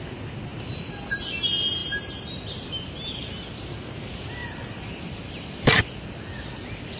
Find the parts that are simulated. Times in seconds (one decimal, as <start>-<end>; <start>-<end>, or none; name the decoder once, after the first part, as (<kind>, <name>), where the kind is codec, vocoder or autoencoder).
4.4-5.8 (vocoder, BigVGAN v2)